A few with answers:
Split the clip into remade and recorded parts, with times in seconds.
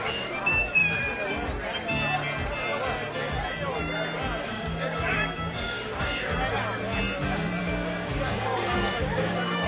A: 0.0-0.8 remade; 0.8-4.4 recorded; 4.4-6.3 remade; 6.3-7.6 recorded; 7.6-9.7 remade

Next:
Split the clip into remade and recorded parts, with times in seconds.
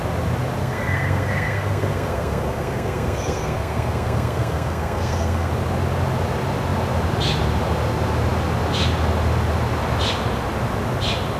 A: 0.0-0.6 recorded; 0.6-5.5 remade; 5.5-11.4 recorded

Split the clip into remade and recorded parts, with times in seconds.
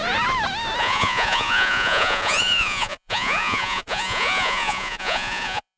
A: 0.0-0.8 recorded; 0.8-5.8 remade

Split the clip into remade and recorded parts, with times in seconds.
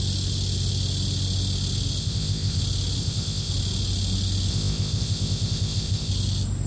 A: 0.0-2.0 recorded; 2.0-2.6 remade; 2.6-3.0 recorded; 3.0-3.5 remade; 3.5-4.5 recorded; 4.5-6.1 remade; 6.1-6.7 recorded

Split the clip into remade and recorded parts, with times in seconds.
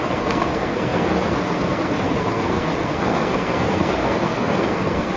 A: 0.0-5.2 remade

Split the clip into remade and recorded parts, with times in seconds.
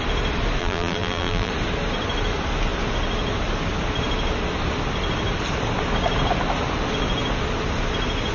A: 0.0-0.6 recorded; 0.6-1.5 remade; 1.5-8.3 recorded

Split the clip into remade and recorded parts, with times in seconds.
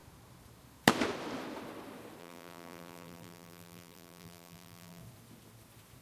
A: 0.0-2.2 recorded; 2.2-5.0 remade; 5.0-6.0 recorded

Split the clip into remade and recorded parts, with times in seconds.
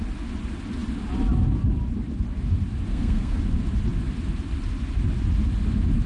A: 0.0-2.9 recorded; 2.9-3.4 remade; 3.4-6.1 recorded